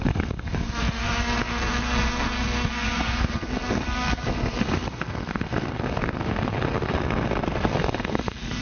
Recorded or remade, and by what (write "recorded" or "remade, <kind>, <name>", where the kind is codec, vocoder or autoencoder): remade, codec, SNAC